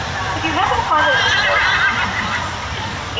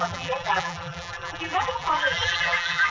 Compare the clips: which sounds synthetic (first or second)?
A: second